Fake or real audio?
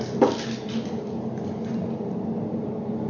real